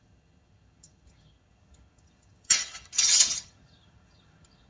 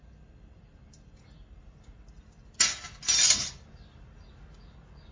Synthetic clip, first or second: first